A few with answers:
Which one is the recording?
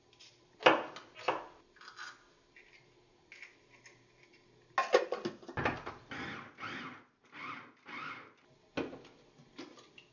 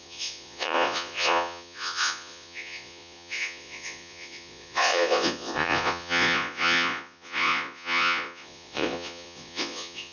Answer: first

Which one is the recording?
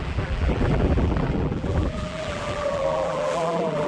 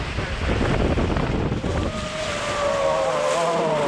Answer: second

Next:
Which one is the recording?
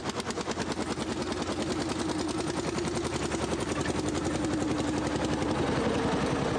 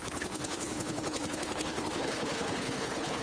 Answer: first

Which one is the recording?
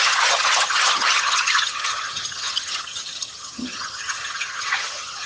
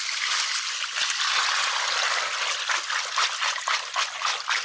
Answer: second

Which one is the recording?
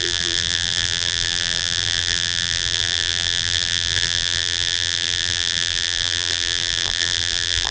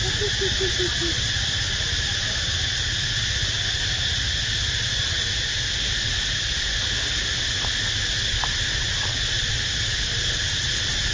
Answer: second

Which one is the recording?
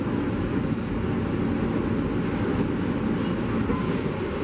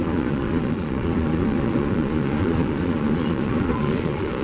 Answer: first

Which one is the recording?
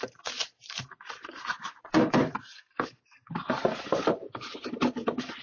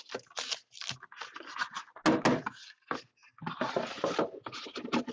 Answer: second